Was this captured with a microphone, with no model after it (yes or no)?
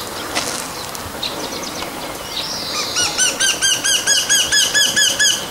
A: yes